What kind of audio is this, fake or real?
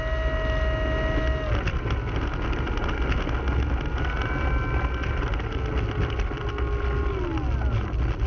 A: real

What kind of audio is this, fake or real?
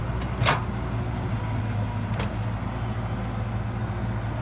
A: real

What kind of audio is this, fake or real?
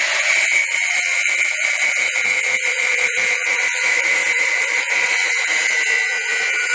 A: fake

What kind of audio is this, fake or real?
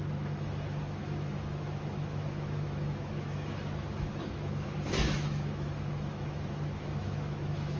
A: fake